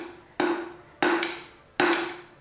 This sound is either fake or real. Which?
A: real